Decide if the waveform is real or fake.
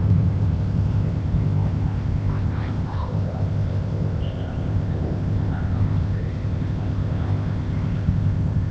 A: fake